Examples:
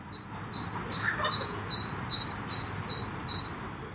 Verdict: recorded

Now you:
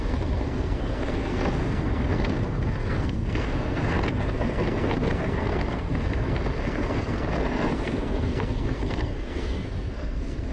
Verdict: remade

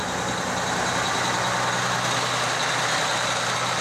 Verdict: recorded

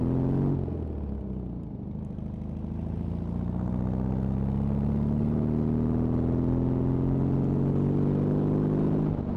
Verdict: recorded